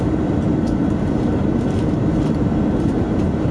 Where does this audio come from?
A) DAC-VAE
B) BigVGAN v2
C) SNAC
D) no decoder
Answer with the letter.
B